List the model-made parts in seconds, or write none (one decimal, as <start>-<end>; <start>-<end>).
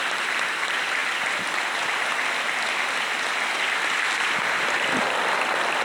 none